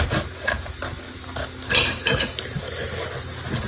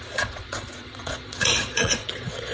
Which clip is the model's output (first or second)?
second